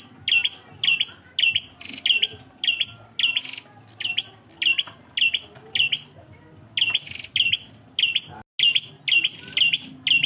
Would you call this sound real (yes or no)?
yes